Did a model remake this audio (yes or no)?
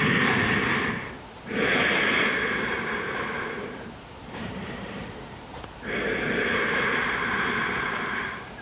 yes